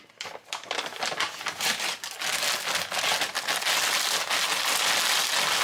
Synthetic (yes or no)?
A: no